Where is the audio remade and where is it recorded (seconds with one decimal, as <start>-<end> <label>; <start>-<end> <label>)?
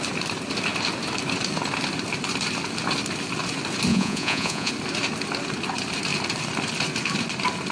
0.0-3.9 recorded; 3.9-4.7 remade; 4.7-7.7 recorded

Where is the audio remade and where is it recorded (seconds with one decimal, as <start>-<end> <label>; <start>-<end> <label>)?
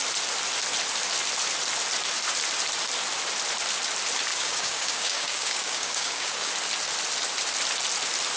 0.0-4.3 recorded; 4.3-6.5 remade; 6.5-8.4 recorded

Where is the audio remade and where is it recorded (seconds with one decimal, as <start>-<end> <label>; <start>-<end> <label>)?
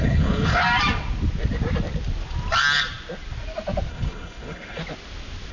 0.0-0.6 remade; 0.6-3.9 recorded; 3.9-4.8 remade; 4.8-5.5 recorded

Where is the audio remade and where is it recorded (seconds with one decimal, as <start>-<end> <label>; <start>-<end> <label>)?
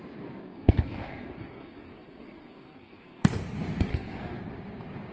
0.0-0.4 recorded; 0.4-3.4 remade; 3.4-3.9 recorded; 3.9-4.4 remade; 4.4-5.1 recorded